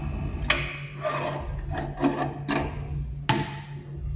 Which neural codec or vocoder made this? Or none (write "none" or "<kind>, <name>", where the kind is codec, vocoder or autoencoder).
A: none